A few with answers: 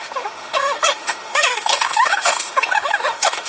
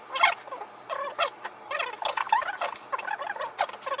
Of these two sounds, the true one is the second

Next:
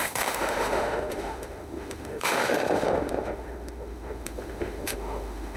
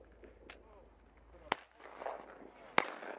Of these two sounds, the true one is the second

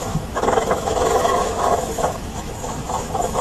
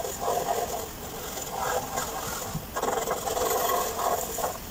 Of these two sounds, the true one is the second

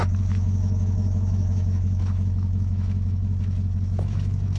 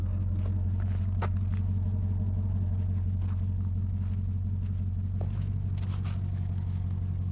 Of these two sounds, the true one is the second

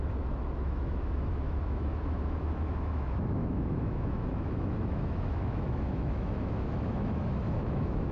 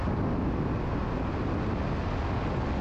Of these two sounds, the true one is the second